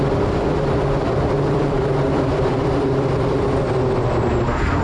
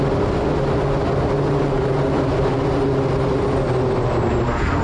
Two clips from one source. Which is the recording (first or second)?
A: second